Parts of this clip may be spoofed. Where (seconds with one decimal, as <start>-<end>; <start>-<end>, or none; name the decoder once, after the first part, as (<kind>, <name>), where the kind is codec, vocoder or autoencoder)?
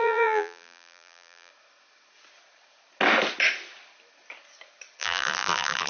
0.0-1.5 (vocoder, BigVGAN v2); 5.0-5.9